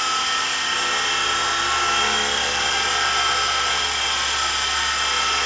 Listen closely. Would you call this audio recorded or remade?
recorded